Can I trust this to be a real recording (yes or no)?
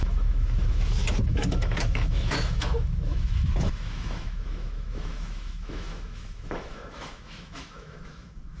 no